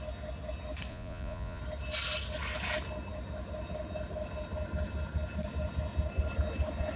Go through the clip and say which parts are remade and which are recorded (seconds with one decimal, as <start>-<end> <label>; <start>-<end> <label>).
0.0-0.9 recorded; 0.9-1.6 remade; 1.6-7.0 recorded